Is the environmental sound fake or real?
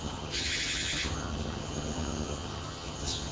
fake